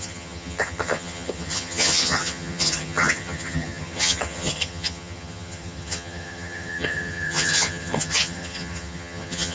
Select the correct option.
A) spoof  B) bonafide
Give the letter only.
A